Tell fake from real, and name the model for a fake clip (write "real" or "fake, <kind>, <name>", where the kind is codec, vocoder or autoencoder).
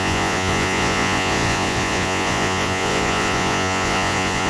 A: fake, vocoder, Vocos